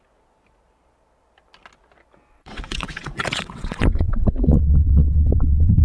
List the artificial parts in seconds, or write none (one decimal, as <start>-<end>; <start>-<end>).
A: 2.3-5.8